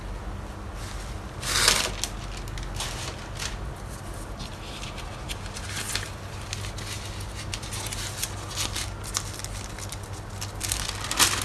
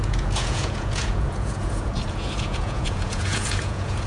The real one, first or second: first